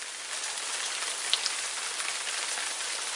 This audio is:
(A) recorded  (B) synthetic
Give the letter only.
A